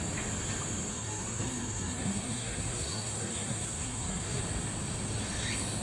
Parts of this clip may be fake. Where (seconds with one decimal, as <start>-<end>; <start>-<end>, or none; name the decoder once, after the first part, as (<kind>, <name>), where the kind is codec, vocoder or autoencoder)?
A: 0.9-4.4 (codec, SNAC)